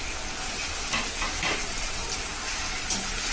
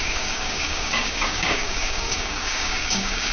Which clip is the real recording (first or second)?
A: first